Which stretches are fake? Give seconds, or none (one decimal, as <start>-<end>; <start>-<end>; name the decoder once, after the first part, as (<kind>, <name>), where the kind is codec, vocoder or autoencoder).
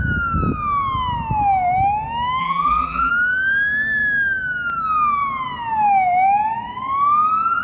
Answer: 2.4-3.1 (vocoder, BigVGAN v2)